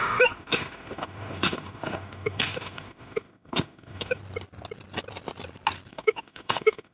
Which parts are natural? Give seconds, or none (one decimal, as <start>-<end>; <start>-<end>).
4.2-5.9

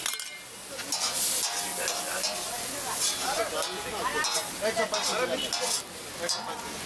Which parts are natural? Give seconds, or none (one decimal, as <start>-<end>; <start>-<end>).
0.0-6.9

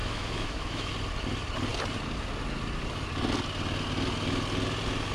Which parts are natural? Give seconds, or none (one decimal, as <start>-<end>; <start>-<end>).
0.9-5.1